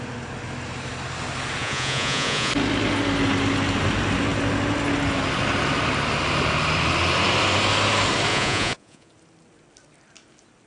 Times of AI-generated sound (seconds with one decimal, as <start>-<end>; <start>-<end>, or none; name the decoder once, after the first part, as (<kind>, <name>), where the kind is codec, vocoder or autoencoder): 1.6-2.5 (vocoder, Vocos); 8.3-9.1